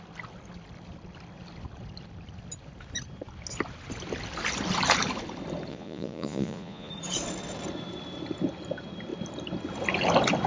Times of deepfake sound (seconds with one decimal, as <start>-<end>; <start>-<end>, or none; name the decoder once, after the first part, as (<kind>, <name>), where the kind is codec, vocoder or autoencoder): 5.7-6.9 (vocoder, Vocos)